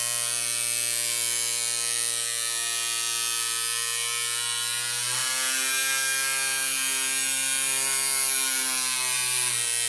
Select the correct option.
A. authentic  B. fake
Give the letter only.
A